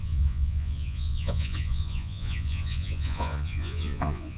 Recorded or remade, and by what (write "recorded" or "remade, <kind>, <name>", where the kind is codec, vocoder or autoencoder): remade, vocoder, Vocos